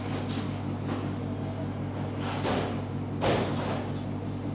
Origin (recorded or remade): recorded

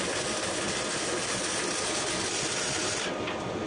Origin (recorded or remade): recorded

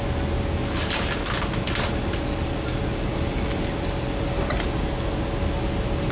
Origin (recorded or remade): recorded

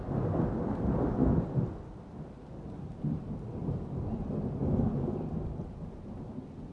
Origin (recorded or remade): recorded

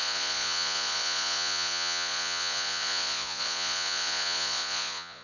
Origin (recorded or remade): remade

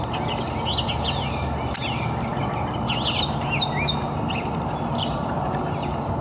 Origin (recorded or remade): recorded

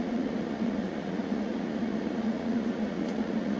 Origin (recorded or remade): remade